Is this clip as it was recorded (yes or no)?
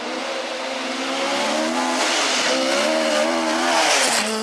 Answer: yes